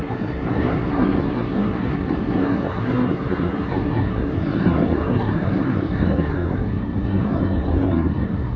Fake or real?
fake